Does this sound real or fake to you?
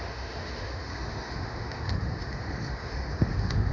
fake